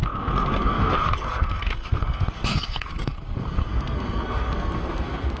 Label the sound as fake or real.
fake